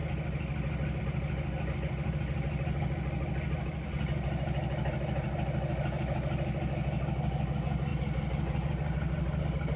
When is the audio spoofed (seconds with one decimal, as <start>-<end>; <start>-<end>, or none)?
none